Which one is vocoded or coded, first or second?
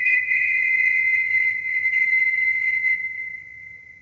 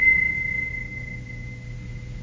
first